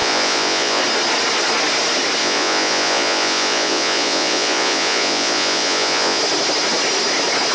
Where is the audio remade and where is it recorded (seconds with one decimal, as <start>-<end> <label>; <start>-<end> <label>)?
0.0-0.8 remade; 0.8-2.2 recorded; 2.2-6.2 remade; 6.2-7.5 recorded